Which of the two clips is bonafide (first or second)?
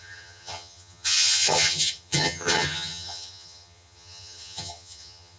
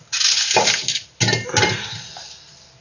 second